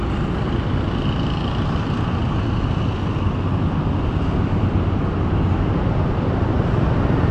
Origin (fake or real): real